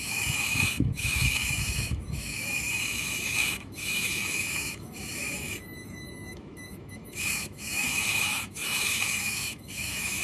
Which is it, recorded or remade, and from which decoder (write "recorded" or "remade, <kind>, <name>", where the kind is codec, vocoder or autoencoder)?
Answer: remade, autoencoder, DAC-VAE